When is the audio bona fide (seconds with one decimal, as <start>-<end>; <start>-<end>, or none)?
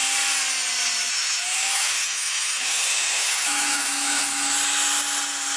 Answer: 0.0-1.1; 4.5-5.6